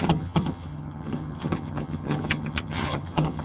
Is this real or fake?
fake